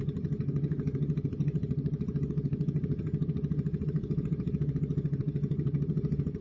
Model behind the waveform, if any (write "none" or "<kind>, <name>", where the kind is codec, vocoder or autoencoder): vocoder, HiFi-GAN